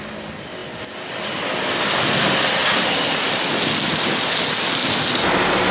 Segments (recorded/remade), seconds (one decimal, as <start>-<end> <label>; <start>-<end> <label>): 0.0-5.7 recorded